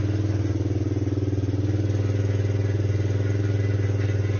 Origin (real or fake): real